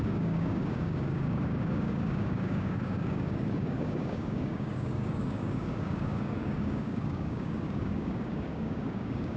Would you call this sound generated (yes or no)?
yes